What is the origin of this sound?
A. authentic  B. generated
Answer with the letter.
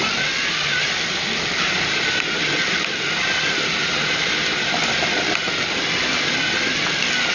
B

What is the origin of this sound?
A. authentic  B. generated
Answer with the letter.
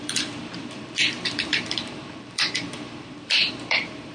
B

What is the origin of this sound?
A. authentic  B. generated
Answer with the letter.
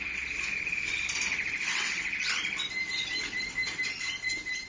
B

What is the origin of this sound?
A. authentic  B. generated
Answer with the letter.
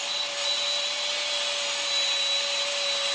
A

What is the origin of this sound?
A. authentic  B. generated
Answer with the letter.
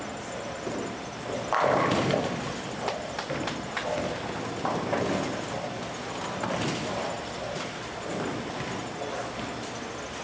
A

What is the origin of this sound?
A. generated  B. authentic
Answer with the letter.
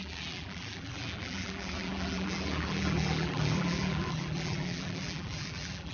A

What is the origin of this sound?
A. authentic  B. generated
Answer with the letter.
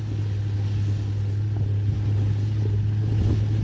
A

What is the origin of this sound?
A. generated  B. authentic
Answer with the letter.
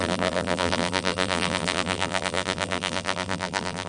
A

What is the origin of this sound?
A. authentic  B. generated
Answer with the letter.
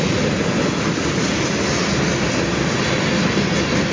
A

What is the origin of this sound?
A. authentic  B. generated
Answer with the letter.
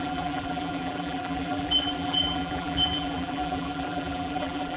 B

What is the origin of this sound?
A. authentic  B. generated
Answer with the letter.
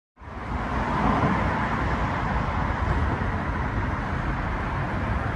B